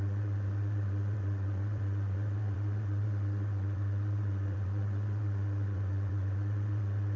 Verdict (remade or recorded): remade